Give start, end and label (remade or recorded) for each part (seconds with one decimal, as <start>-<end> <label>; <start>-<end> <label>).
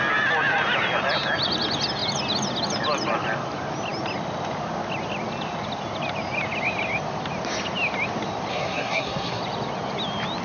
0.0-8.5 recorded; 8.5-9.4 remade; 9.4-10.4 recorded